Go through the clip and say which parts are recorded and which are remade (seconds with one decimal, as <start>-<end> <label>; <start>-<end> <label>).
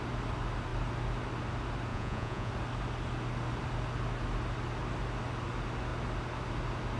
0.0-1.9 recorded; 1.9-2.5 remade; 2.5-7.0 recorded